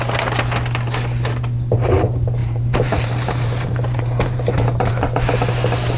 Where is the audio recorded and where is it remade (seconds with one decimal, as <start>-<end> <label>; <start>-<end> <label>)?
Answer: 0.0-2.4 recorded; 2.4-4.9 remade; 4.9-6.0 recorded